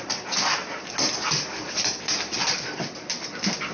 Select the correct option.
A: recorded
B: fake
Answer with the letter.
A